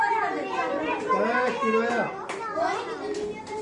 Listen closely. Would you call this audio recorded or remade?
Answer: recorded